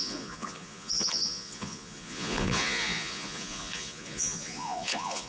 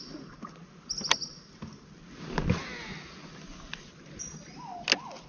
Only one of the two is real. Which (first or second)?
second